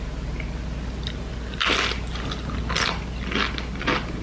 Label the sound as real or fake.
real